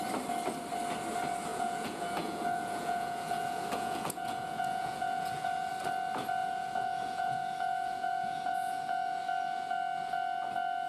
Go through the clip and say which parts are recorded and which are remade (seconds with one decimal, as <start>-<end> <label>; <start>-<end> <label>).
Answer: 0.0-1.5 recorded; 1.5-5.7 remade; 5.7-6.4 recorded; 6.4-9.2 remade; 9.2-10.9 recorded